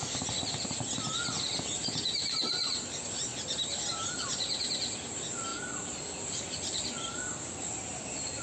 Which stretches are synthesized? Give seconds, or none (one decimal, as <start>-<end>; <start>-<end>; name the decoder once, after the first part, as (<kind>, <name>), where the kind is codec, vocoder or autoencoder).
3.3-5.1 (vocoder, BigVGAN v2); 5.5-7.6